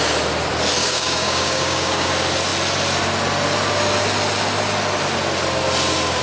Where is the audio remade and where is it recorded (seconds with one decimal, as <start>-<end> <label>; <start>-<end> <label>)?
0.0-0.8 recorded; 0.8-2.1 remade; 2.1-6.2 recorded